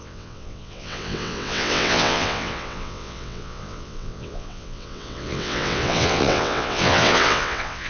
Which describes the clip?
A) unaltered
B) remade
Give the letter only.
B